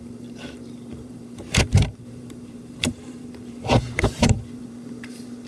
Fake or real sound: fake